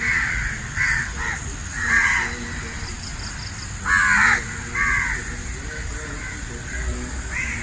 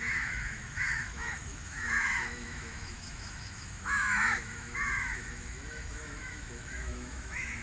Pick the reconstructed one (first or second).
second